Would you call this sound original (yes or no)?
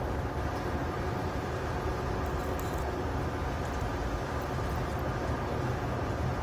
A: yes